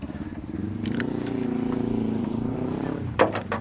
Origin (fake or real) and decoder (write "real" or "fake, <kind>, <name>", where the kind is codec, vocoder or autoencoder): fake, vocoder, BigVGAN v2